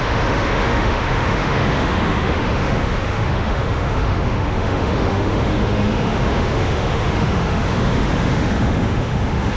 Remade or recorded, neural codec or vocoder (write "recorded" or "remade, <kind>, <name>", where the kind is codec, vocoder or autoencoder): remade, autoencoder, DAC-VAE